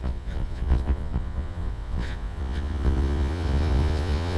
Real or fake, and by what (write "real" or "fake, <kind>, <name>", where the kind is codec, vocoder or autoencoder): fake, vocoder, Vocos